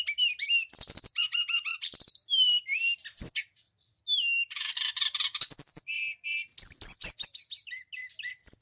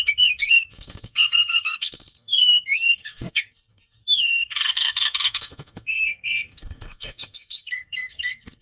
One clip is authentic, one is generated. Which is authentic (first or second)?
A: first